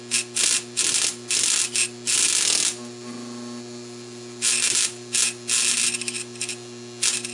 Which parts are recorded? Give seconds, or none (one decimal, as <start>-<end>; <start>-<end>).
0.0-7.3